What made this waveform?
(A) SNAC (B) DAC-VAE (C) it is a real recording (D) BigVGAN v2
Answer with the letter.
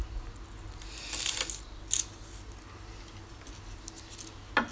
C